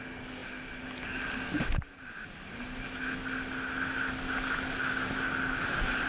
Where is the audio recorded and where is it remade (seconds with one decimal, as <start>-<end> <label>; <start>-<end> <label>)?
0.0-6.1 recorded